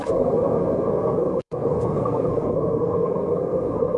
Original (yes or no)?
no